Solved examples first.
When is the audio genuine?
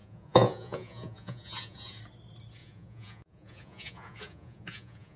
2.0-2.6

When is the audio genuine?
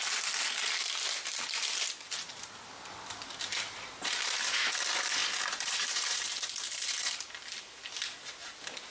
0.0-8.9